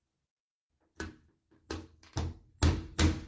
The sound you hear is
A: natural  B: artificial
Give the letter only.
A